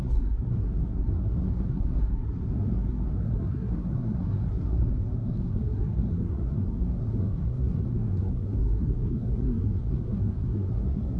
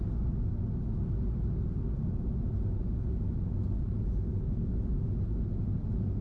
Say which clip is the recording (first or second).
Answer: second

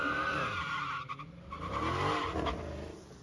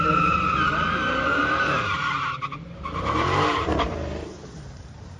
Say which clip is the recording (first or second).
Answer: first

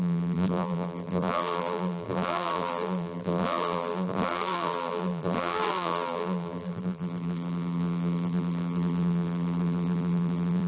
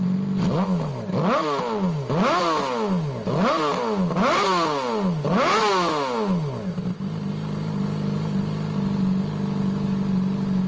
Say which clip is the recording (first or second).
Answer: second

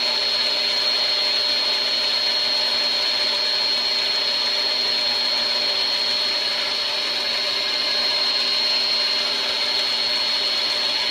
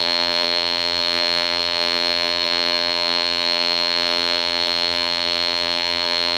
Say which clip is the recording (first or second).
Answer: first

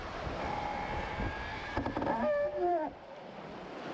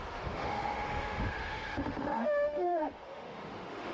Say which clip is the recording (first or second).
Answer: first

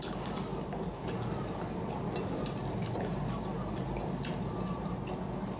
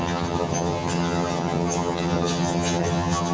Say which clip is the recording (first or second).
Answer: first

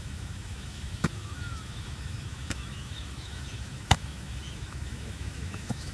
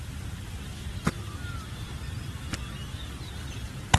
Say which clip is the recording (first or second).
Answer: second